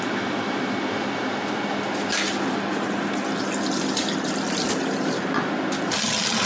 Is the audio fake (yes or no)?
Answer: no